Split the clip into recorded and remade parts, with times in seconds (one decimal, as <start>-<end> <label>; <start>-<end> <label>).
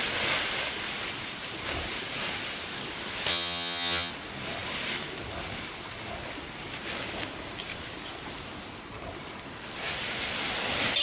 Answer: 0.0-3.3 recorded; 3.3-4.1 remade; 4.1-11.0 recorded